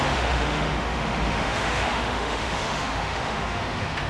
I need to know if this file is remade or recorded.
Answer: remade